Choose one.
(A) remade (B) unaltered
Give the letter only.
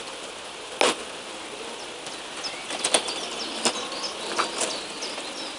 B